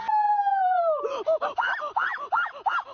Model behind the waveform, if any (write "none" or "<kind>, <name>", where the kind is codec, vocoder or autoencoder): none